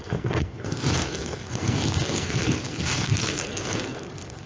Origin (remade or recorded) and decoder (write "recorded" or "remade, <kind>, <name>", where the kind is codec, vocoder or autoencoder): remade, codec, SNAC